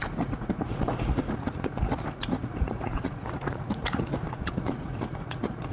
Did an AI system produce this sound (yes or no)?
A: yes